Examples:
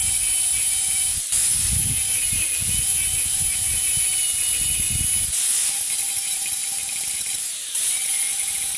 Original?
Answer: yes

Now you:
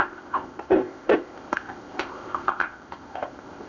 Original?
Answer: no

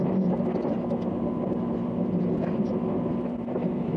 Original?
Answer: yes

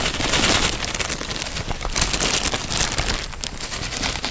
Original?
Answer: yes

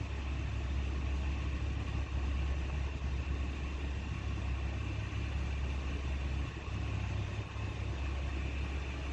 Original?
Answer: yes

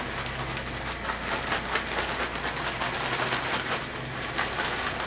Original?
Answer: yes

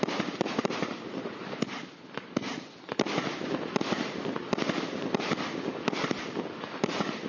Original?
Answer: yes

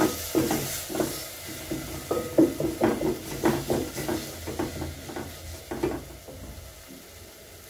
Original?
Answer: yes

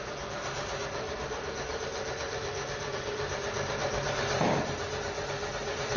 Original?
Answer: no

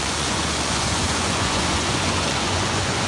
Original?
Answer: no